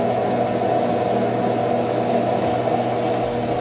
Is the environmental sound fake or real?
real